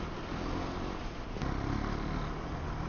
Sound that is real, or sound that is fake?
real